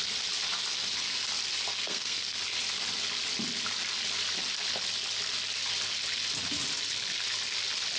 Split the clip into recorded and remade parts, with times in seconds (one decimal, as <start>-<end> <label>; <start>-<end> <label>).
0.0-1.7 recorded; 1.7-2.4 remade; 2.4-8.0 recorded